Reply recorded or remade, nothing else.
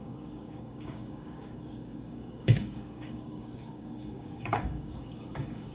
remade